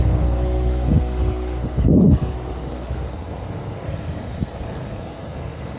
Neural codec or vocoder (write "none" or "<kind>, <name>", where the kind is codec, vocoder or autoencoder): codec, SNAC